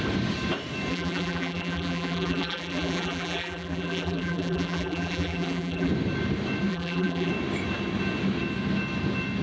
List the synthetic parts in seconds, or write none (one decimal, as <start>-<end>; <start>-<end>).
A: 0.9-5.9; 6.7-7.3